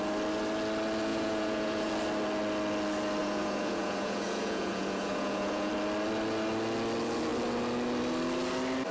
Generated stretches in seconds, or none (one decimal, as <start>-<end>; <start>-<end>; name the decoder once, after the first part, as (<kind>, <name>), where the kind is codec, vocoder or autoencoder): 1.1-1.9 (vocoder, Vocos); 3.2-5.7